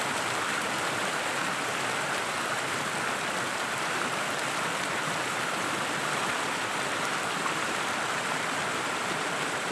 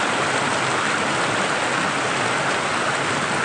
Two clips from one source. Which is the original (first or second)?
second